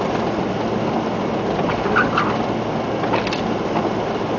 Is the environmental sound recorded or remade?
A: recorded